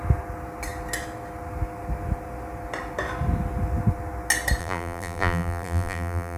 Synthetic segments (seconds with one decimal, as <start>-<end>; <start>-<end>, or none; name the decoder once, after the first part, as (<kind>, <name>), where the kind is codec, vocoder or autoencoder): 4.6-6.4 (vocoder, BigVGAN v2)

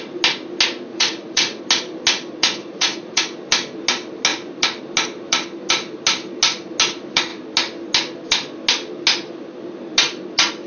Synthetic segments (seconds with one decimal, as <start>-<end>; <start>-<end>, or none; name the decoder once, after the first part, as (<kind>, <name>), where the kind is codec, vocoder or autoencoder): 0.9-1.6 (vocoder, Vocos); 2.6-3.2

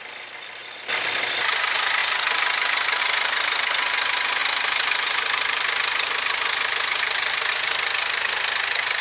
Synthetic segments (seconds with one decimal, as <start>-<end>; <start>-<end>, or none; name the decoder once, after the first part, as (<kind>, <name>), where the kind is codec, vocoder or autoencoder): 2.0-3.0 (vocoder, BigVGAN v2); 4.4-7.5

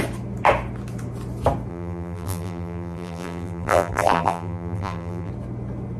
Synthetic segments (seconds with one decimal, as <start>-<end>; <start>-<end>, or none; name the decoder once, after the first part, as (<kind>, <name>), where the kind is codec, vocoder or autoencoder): 1.7-5.3 (vocoder, BigVGAN v2)

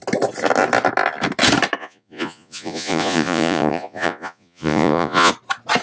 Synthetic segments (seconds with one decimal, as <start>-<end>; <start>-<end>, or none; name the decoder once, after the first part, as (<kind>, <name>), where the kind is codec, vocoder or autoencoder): 1.8-5.3 (vocoder, Vocos)

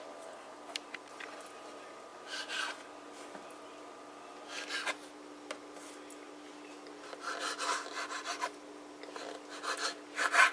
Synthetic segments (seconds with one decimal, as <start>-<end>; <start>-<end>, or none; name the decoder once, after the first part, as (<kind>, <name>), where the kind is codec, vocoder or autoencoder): none